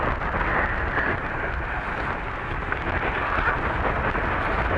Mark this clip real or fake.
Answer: real